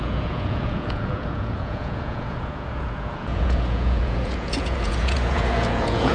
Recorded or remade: remade